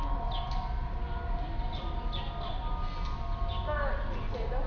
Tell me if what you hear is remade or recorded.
recorded